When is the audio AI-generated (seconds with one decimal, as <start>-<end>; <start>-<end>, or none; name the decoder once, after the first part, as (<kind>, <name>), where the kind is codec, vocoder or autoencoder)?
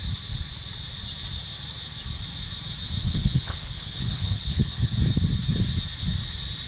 3.0-4.9 (codec, HILCodec)